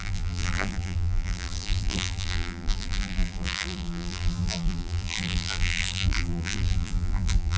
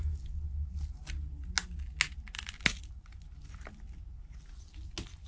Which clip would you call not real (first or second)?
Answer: first